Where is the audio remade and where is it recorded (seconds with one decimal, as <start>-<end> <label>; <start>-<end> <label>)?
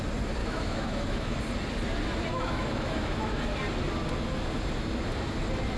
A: 0.0-0.4 recorded; 0.4-1.4 remade; 1.4-2.3 recorded; 2.3-3.4 remade; 3.4-5.8 recorded